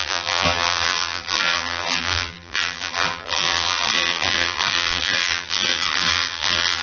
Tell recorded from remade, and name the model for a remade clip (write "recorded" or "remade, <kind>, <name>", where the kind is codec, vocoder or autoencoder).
remade, vocoder, BigVGAN v2